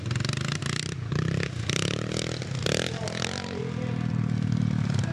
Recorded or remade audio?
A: recorded